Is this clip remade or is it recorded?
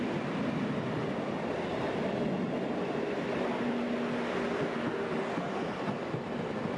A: recorded